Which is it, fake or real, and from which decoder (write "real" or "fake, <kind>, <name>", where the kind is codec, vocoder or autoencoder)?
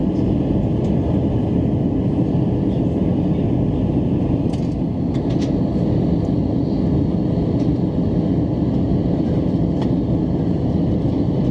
real